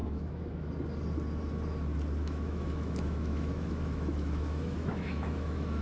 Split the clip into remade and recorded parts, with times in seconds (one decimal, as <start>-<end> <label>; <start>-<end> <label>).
0.0-0.7 remade; 0.7-2.2 recorded; 2.2-5.8 remade